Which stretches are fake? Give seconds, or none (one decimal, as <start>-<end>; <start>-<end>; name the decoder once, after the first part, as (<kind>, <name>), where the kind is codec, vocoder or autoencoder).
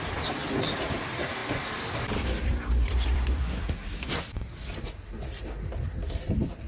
0.0-0.4 (vocoder, BigVGAN v2); 0.9-1.4; 2.4-6.7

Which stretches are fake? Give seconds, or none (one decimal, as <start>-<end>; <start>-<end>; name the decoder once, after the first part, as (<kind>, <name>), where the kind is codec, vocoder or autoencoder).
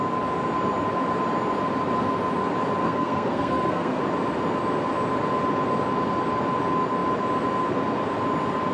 2.8-4.0 (codec, SNAC)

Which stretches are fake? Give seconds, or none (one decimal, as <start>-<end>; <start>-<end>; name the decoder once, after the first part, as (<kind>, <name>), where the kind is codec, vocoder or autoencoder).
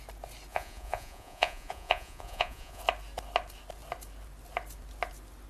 0.5-2.8 (vocoder, Vocos)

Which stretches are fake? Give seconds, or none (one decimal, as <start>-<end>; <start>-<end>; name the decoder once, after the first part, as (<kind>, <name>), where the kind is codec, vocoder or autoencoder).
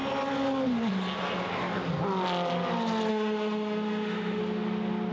3.1-4.4 (autoencoder, DAC-VAE)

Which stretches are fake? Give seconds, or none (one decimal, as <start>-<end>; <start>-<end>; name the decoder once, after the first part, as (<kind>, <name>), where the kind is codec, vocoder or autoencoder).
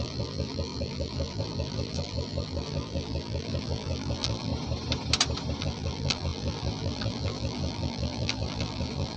0.0-4.5 (vocoder, BigVGAN v2); 5.6-9.2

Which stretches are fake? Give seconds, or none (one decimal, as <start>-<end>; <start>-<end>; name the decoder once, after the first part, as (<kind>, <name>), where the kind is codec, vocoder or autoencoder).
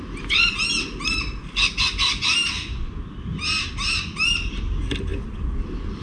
none